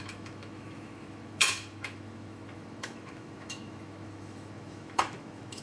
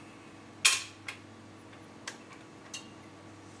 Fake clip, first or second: first